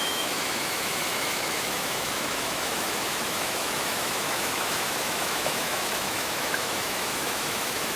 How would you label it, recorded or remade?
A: remade